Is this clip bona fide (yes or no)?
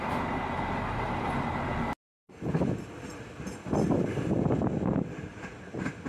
yes